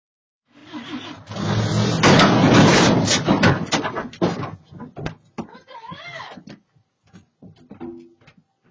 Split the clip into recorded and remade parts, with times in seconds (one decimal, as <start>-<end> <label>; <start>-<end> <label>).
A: 0.0-0.6 recorded; 0.6-1.3 remade; 1.3-2.7 recorded; 2.7-7.1 remade; 7.1-8.7 recorded